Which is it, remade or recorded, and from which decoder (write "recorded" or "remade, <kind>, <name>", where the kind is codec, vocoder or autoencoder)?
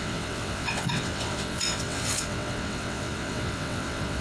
remade, vocoder, WaveNeXt